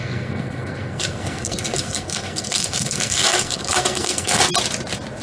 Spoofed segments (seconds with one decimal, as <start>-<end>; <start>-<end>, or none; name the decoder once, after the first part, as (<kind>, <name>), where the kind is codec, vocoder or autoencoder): 0.0-4.4 (codec, SNAC)